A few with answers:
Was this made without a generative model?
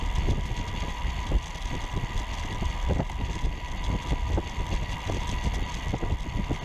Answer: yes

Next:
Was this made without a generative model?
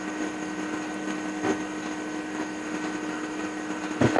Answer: yes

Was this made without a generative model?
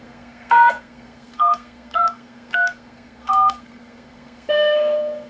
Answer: no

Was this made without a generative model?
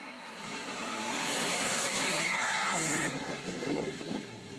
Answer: no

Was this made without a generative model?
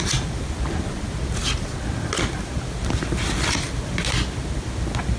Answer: yes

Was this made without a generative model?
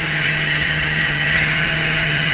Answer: no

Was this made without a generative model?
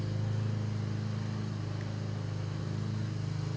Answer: yes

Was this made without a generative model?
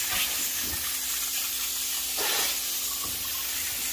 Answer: yes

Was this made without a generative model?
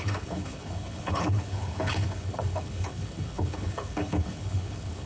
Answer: no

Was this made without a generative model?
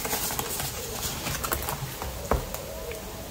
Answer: yes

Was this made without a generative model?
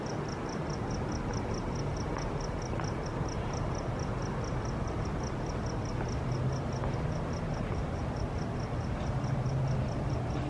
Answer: yes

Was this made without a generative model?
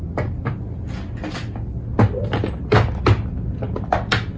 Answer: yes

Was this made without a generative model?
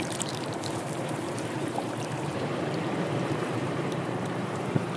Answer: no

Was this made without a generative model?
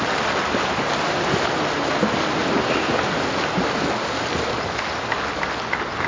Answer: yes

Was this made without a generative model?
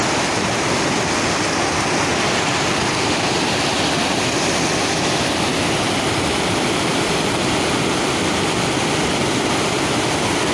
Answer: yes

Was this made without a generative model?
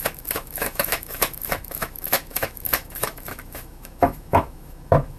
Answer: no